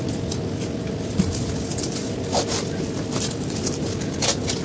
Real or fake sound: real